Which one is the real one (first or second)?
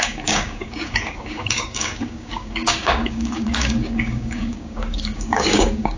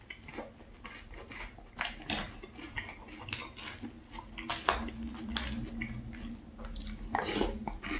second